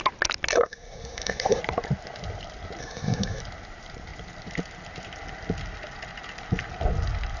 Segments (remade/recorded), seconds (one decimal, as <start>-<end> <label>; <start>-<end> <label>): 0.0-0.5 recorded; 0.5-1.6 remade; 1.6-2.8 recorded; 2.8-3.4 remade; 3.4-7.4 recorded